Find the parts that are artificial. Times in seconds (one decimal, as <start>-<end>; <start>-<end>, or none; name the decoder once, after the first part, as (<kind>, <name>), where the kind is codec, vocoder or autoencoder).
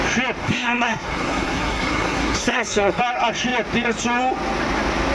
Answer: 0.4-3.0 (codec, SNAC)